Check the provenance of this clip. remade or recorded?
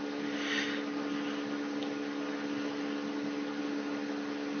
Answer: recorded